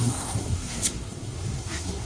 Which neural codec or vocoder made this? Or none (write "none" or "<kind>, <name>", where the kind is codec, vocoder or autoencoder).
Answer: codec, SNAC